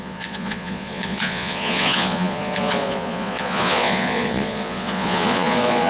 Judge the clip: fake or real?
fake